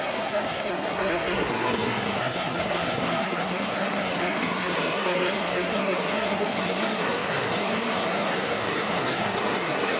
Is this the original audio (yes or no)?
no